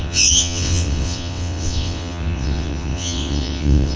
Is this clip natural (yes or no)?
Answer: no